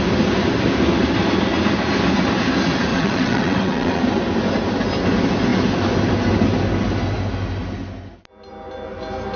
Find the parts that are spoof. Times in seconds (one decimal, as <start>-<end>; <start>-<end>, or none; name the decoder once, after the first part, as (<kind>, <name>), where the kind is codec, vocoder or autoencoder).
2.9-4.0 (vocoder, WaveNeXt)